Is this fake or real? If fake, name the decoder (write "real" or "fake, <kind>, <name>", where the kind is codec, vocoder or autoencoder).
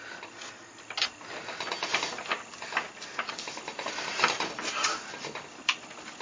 real